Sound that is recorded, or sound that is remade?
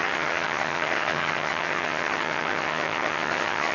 remade